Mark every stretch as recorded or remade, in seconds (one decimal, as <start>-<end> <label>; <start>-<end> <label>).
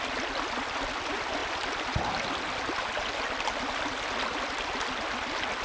0.0-5.6 recorded